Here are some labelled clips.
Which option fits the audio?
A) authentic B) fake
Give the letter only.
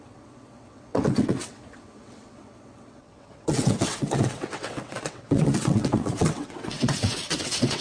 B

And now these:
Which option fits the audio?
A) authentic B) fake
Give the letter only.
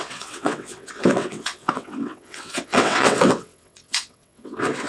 B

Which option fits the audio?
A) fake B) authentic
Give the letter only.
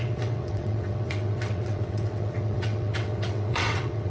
A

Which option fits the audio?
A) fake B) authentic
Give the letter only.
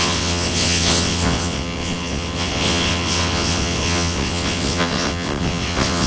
A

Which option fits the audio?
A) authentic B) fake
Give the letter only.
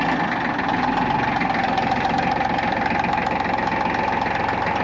A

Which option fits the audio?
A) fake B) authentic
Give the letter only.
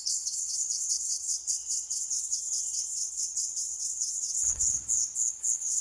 A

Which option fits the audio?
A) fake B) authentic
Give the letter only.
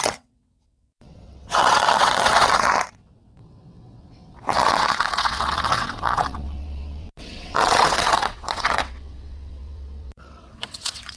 A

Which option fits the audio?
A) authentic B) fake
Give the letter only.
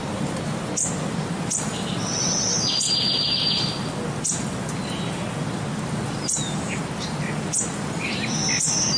A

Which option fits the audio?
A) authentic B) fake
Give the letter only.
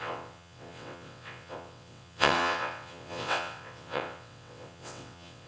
B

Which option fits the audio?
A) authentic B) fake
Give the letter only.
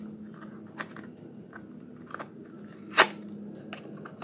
A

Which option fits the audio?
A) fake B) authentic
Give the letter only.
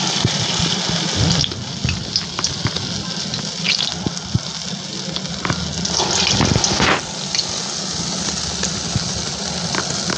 B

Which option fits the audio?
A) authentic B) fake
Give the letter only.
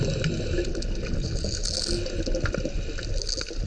A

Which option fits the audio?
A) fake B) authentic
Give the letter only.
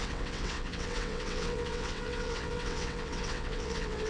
A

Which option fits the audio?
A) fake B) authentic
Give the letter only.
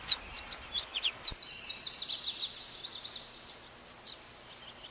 B